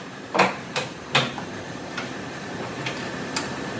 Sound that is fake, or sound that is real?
fake